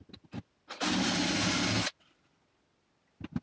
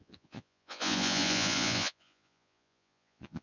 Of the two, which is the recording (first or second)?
first